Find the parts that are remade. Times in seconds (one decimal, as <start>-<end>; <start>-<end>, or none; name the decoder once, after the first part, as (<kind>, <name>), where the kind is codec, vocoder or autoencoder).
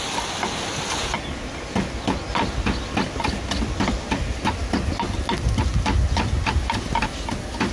none